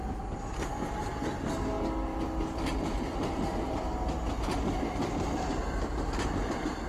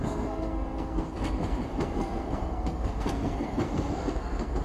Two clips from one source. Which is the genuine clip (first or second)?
first